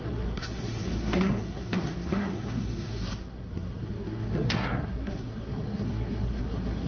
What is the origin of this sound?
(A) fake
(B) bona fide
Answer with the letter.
A